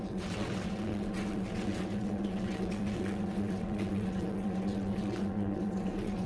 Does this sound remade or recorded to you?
remade